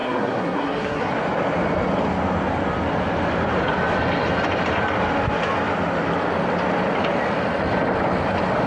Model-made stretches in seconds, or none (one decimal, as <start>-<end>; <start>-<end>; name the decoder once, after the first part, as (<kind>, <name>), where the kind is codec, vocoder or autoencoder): 0.0-1.1 (codec, SNAC)